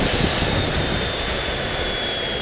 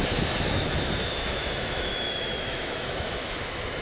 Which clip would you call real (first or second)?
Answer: first